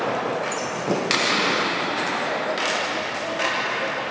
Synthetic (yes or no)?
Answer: no